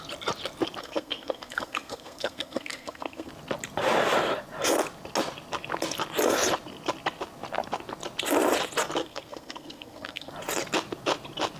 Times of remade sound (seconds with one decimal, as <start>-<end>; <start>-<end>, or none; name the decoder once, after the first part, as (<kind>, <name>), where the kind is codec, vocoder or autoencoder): 0.8-3.3 (codec, SNAC); 9.0-10.3